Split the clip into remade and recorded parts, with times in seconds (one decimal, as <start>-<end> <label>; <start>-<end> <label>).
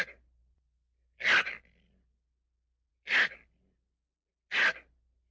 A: 0.0-5.3 recorded